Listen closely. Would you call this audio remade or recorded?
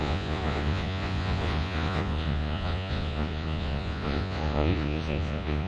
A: remade